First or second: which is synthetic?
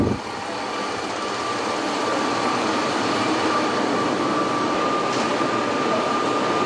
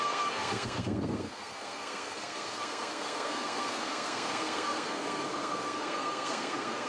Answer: second